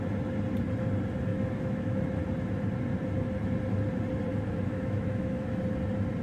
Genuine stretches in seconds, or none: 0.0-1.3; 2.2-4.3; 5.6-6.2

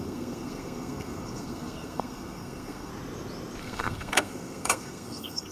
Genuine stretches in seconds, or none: 2.9-3.6

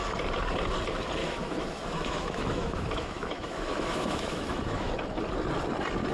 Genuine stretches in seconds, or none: 0.0-1.2; 4.9-6.1

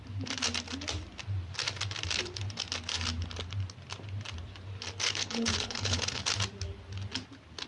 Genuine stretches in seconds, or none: 0.0-5.0; 6.2-7.7